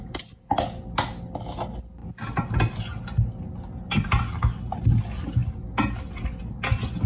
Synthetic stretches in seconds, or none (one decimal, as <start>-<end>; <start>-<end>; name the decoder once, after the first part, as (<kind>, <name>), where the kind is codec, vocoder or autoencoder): none